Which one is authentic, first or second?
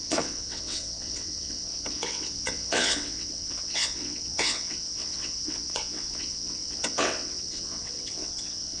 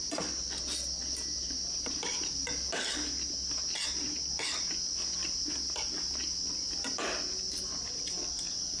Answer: second